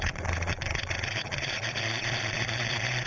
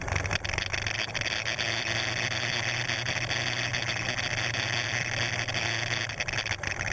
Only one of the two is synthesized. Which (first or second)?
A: first